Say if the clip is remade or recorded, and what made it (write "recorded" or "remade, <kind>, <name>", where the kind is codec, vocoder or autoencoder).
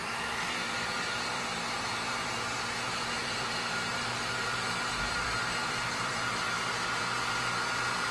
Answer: remade, vocoder, BigVGAN v2